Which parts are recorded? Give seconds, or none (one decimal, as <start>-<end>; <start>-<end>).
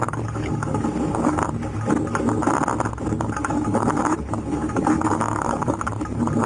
1.4-3.0